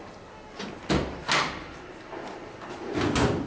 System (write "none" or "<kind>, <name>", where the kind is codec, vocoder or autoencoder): none